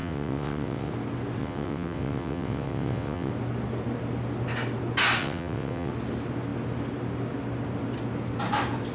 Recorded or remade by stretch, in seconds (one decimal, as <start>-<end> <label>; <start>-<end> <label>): 0.0-0.9 remade; 0.9-1.4 recorded; 1.4-3.3 remade; 3.3-5.2 recorded; 5.2-5.9 remade; 5.9-8.9 recorded

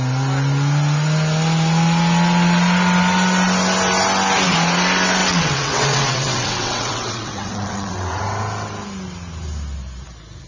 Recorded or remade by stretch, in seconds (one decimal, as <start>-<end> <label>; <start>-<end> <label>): 0.0-5.2 recorded; 5.2-8.2 remade; 8.2-10.5 recorded

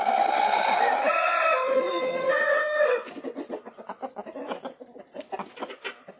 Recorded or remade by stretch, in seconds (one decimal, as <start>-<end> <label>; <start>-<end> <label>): 0.0-1.5 recorded; 1.5-3.1 remade; 3.1-6.2 recorded

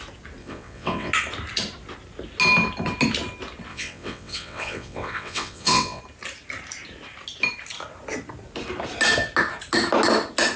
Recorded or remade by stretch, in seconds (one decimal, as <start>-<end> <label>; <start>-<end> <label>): 0.0-0.4 recorded; 0.4-1.1 remade; 1.1-3.7 recorded; 3.7-6.0 remade; 6.0-10.6 recorded

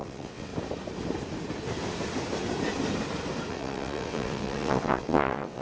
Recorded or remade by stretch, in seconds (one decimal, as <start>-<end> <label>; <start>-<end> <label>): 0.0-0.5 remade; 0.5-3.5 recorded; 3.5-5.6 remade

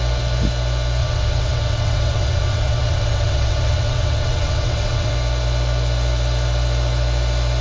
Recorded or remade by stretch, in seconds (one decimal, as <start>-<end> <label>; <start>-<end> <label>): 0.0-1.0 recorded; 1.0-5.1 remade; 5.1-7.6 recorded

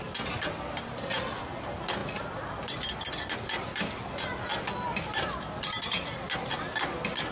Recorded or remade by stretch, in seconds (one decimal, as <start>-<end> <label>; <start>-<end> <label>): 0.0-7.3 recorded